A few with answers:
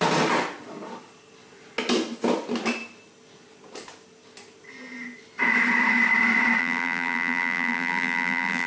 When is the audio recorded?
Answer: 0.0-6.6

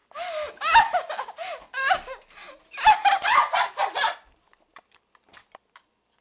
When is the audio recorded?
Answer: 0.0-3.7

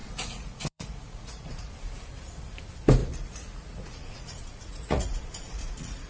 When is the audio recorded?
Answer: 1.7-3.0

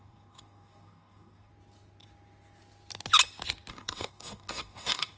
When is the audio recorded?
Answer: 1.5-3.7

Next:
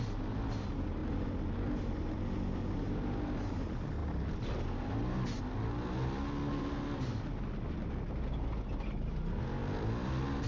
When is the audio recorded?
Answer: 0.0-10.5

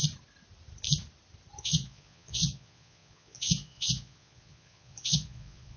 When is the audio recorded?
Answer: 0.0-1.6

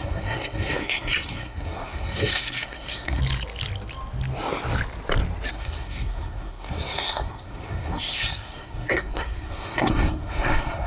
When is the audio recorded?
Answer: 3.2-5.5

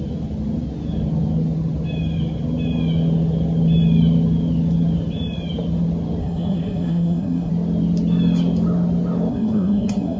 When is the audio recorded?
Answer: 0.0-6.2; 7.5-9.3